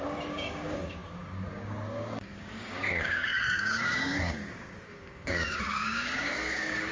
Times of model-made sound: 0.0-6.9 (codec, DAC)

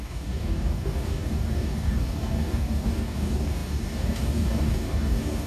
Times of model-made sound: 0.0-5.5 (codec, DAC)

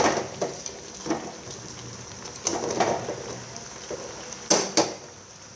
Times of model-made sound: none

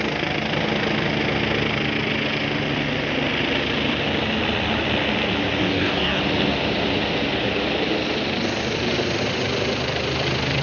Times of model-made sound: 5.6-6.2 (codec, DAC)

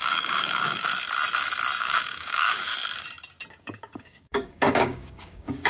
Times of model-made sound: 0.0-0.9 (codec, DAC); 1.8-2.7; 3.5-5.7

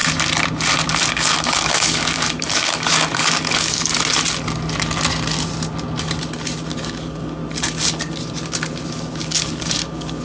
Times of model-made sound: 1.1-3.9 (codec, DAC); 6.7-7.4; 8.9-10.2

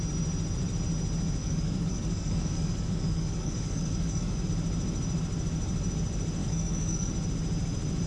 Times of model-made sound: 1.4-4.5 (codec, DAC); 6.4-7.1

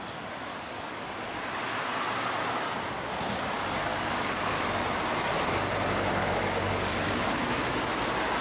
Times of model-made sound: 0.5-1.2 (codec, DAC); 3.9-4.8; 6.2-7.4